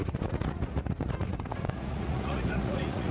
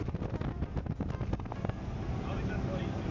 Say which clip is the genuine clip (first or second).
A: second